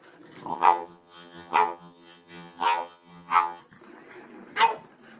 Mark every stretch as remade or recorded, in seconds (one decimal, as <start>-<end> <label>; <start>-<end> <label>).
0.0-0.5 recorded; 0.5-3.6 remade; 3.6-5.2 recorded

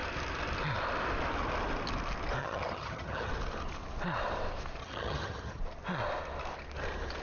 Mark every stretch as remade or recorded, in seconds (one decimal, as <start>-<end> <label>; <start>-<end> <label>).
0.0-2.4 recorded; 2.4-3.3 remade; 3.3-4.8 recorded; 4.8-5.6 remade; 5.6-7.2 recorded